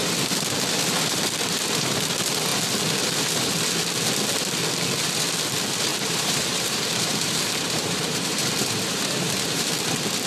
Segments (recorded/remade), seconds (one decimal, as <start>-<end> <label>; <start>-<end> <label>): 0.0-5.9 recorded; 5.9-9.7 remade; 9.7-10.3 recorded